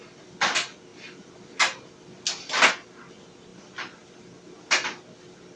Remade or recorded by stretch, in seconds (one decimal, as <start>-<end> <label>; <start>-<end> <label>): 0.0-3.5 recorded; 3.5-4.1 remade; 4.1-5.6 recorded